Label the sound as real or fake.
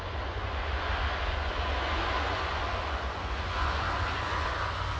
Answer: fake